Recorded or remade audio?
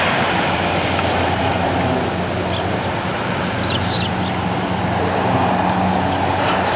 recorded